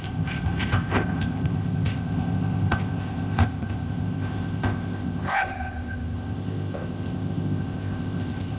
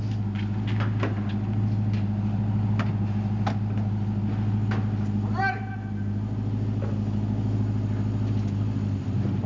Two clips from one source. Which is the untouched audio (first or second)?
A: second